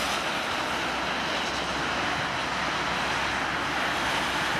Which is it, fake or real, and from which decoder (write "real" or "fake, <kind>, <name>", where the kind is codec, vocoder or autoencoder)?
real